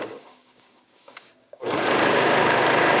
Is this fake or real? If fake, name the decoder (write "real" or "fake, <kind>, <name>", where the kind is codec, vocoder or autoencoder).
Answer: fake, codec, DAC